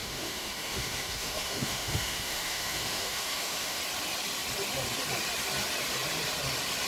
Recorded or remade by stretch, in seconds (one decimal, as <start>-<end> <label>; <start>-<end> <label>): 0.0-3.8 remade; 3.8-6.9 recorded